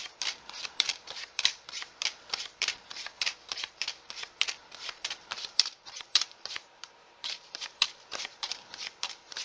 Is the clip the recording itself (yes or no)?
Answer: no